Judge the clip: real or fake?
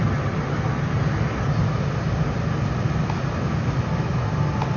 real